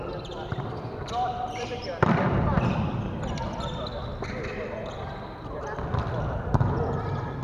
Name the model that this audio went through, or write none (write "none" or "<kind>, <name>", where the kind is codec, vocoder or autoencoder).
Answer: none